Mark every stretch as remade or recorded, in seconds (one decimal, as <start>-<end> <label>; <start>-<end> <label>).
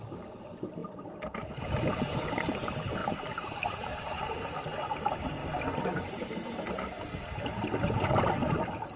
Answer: 0.0-5.4 remade; 5.4-6.0 recorded; 6.0-9.0 remade